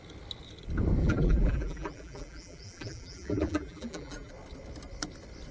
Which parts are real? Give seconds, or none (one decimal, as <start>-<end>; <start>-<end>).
0.0-1.0; 4.3-5.5

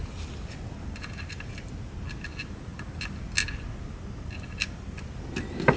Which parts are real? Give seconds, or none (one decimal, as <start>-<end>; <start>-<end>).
0.0-5.8

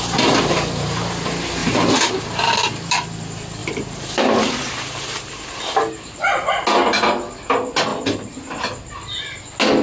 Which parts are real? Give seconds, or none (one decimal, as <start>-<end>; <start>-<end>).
0.0-1.6; 2.7-3.6; 6.5-7.9; 8.6-9.8

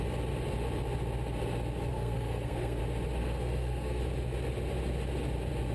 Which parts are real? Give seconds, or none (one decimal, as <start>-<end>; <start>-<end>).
0.0-1.9; 2.8-3.2; 4.0-5.7

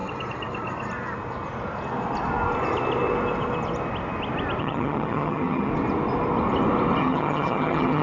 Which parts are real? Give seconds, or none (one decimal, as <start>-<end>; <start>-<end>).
0.0-4.6; 5.7-7.0

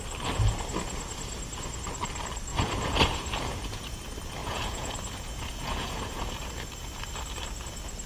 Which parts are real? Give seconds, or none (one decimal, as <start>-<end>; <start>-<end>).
0.0-2.5; 4.0-4.4; 6.5-8.1